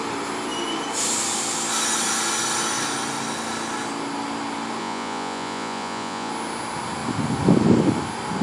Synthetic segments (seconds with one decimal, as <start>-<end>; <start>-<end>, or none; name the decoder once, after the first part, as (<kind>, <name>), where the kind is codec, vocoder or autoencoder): 4.8-6.3 (vocoder, Vocos)